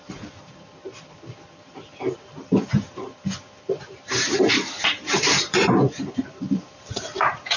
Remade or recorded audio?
remade